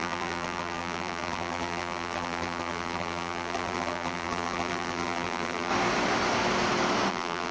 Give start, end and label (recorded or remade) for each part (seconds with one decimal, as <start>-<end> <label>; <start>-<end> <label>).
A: 0.0-5.7 remade; 5.7-7.1 recorded; 7.1-7.5 remade